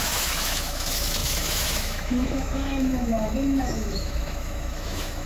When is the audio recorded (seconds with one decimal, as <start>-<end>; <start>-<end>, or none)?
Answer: none